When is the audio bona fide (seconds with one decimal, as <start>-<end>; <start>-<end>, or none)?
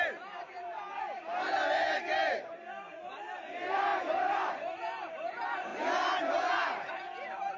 2.2-3.0; 5.7-6.9